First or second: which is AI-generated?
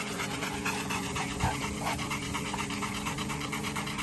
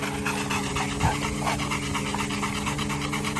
first